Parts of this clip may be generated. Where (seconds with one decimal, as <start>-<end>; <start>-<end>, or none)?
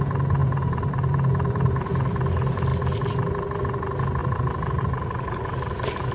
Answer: 0.4-1.9